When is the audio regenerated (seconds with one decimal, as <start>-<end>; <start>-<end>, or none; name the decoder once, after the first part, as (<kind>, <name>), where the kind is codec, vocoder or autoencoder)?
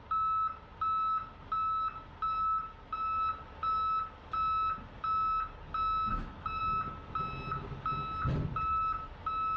6.1-6.6 (autoencoder, DAC-VAE)